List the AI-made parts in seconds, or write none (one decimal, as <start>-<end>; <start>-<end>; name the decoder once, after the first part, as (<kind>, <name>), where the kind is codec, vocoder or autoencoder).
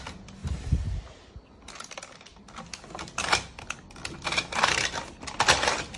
0.4-1.2 (vocoder, BigVGAN v2); 4.7-5.2